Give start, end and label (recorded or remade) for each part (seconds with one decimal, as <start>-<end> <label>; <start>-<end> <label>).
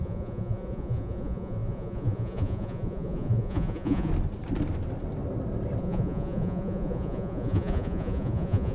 0.0-4.1 remade; 4.1-5.8 recorded; 5.8-8.7 remade